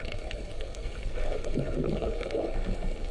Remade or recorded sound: remade